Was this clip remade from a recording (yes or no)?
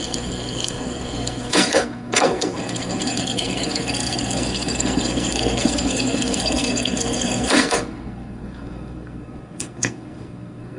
yes